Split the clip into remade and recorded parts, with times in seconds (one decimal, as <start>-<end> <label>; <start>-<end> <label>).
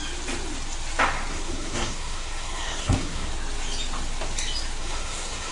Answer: 0.0-1.3 recorded; 1.3-3.3 remade; 3.3-4.8 recorded; 4.8-5.5 remade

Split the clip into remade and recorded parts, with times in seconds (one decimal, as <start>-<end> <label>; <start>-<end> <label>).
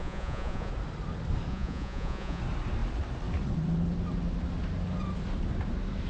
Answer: 0.0-0.7 remade; 0.7-1.5 recorded; 1.5-2.4 remade; 2.4-6.1 recorded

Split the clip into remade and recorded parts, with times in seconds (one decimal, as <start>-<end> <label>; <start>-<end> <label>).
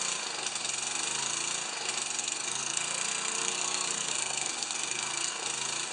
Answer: 0.0-2.2 recorded; 2.2-5.4 remade; 5.4-5.9 recorded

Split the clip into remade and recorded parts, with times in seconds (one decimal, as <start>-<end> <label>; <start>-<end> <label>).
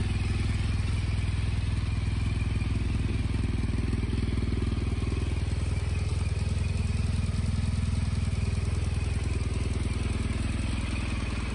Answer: 0.0-11.5 recorded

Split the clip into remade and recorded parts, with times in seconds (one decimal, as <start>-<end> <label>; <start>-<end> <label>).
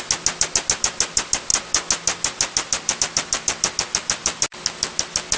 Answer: 0.0-5.4 recorded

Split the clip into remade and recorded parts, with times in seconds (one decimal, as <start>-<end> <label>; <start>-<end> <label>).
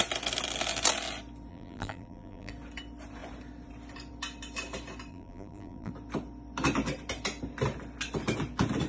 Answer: 0.0-1.5 recorded; 1.5-2.5 remade; 2.5-5.1 recorded; 5.1-5.9 remade; 5.9-8.9 recorded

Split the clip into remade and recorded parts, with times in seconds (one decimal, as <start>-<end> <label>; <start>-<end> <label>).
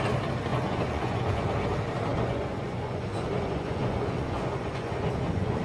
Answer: 0.0-0.5 recorded; 0.5-1.5 remade; 1.5-2.1 recorded; 2.1-5.6 remade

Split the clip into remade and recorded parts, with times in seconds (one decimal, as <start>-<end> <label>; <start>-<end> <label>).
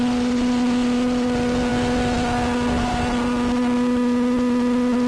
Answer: 0.0-5.1 recorded